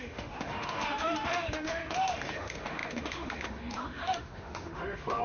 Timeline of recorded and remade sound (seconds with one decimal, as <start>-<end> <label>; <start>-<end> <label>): 0.0-5.2 remade